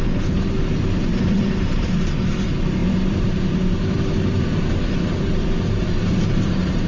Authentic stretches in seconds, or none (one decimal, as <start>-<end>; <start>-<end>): 0.0-1.1; 2.3-2.8